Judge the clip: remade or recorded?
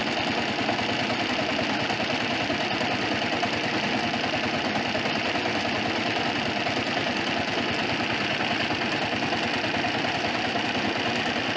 recorded